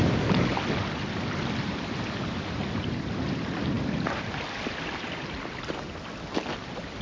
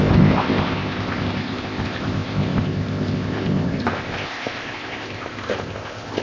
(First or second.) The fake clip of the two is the second